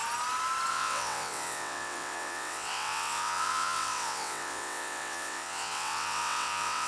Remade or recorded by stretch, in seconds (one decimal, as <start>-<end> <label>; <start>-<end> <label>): 0.0-0.7 recorded; 0.7-6.9 remade

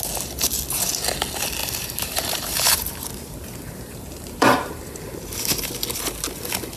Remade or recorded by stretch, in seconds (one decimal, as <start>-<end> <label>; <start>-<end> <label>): 0.0-1.6 recorded; 1.6-5.7 remade; 5.7-6.8 recorded

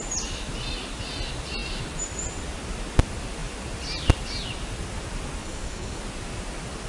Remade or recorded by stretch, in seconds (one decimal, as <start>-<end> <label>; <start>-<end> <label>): 0.0-5.4 recorded; 5.4-6.0 remade; 6.0-6.9 recorded

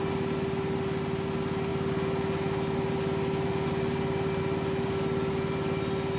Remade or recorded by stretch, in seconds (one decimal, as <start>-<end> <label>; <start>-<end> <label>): 0.0-6.2 recorded